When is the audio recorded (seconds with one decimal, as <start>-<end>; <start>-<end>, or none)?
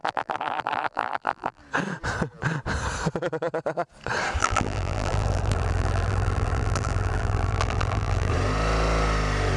1.6-4.4; 8.3-9.6